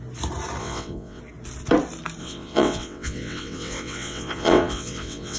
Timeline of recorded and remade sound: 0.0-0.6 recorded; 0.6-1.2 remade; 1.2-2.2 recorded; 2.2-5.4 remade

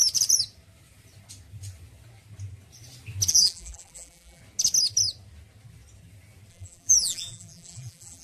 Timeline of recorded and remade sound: 0.0-3.3 recorded; 3.3-4.4 remade; 4.4-6.5 recorded; 6.5-8.2 remade

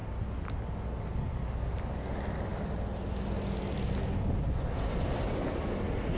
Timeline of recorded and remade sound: 0.0-6.2 recorded

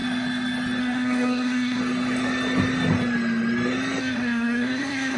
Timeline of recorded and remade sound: 0.0-0.8 recorded; 0.8-1.8 remade; 1.8-4.0 recorded; 4.0-5.2 remade

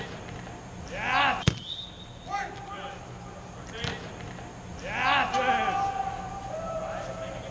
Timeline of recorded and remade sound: 0.0-7.5 recorded

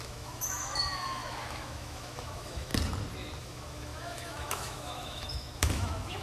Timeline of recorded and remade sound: 0.0-2.7 remade; 2.7-3.4 recorded; 3.4-6.2 remade